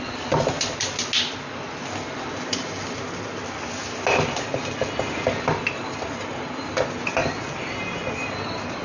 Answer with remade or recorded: recorded